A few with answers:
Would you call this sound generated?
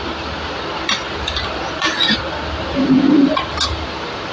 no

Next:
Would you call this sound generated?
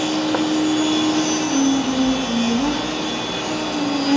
no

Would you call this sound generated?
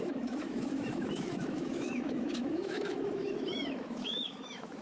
yes